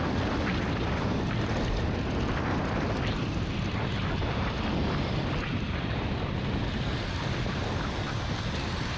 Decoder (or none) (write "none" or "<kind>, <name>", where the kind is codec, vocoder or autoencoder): none